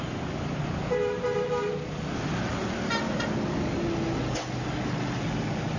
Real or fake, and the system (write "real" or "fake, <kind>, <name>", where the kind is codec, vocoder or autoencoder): real